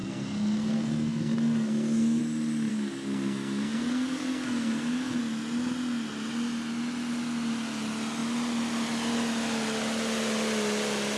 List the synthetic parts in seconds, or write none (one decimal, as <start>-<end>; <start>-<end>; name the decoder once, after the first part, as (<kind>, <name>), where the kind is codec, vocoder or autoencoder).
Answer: 0.0-2.2 (codec, SNAC); 2.7-5.2